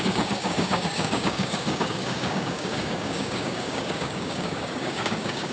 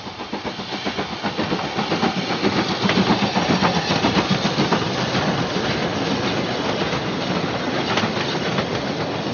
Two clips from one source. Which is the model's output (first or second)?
first